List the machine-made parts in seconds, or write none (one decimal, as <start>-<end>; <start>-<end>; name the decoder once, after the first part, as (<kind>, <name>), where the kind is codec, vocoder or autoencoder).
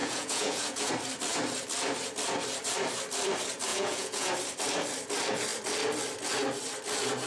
0.0-0.9 (vocoder, Vocos); 3.7-4.3